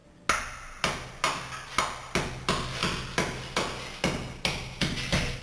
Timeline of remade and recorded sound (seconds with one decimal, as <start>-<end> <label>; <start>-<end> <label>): 0.0-5.4 recorded